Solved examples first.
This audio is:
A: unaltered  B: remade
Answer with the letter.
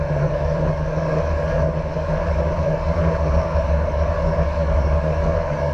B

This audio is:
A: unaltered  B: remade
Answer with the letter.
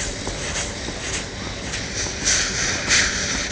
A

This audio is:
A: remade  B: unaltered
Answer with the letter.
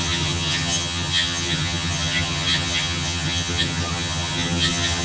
A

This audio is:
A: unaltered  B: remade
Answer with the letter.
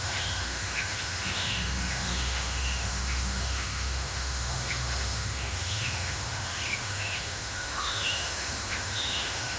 B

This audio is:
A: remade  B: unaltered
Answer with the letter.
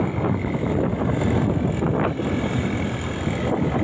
B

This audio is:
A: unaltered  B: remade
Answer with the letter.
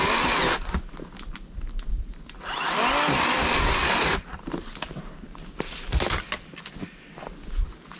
A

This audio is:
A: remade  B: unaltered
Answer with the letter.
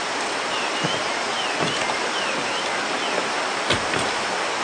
B